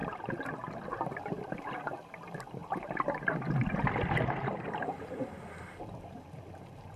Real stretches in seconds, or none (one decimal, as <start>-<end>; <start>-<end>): 0.8-2.6; 5.4-7.0

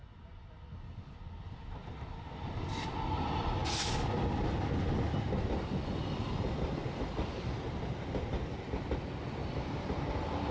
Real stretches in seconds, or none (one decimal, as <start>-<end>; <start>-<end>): 0.0-10.5

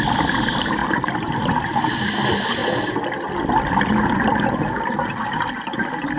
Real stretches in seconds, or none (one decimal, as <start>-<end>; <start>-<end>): 0.0-0.8; 1.7-6.2

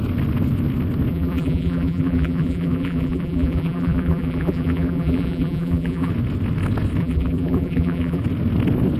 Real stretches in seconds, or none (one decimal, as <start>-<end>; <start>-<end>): 0.0-1.1; 6.1-7.0; 8.2-9.0

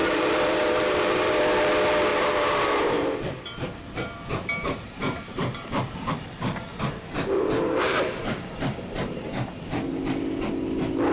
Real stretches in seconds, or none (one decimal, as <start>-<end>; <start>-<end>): 1.4-2.1; 6.1-6.7; 9.9-11.1